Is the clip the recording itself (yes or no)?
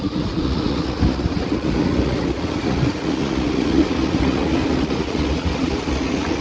no